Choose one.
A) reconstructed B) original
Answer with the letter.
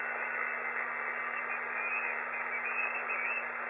B